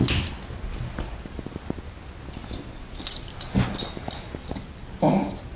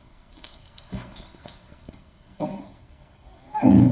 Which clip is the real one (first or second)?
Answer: first